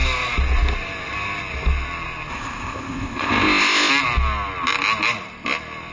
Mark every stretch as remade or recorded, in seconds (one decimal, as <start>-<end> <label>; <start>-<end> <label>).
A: 0.0-2.3 recorded; 2.3-3.9 remade; 3.9-5.9 recorded